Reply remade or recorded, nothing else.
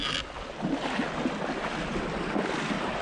recorded